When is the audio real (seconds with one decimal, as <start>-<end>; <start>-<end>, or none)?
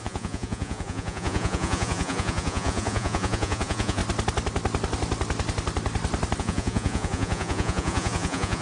4.0-6.4